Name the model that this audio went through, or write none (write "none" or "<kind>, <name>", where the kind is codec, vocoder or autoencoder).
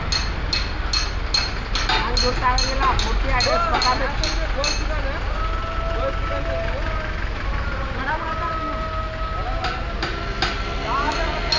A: none